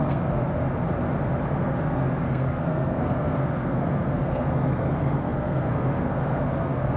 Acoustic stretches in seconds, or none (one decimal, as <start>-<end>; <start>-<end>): 0.4-1.4